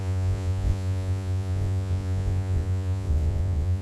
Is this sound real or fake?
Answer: fake